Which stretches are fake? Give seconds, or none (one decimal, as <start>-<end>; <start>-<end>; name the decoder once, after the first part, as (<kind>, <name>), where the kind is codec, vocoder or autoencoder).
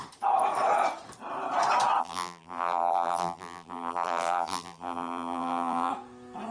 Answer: 2.0-5.9 (vocoder, BigVGAN v2)